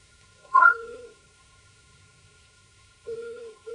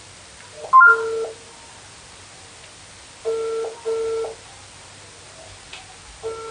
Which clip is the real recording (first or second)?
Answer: second